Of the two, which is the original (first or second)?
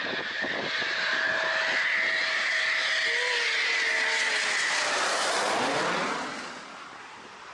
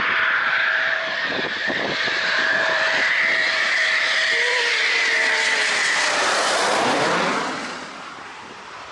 first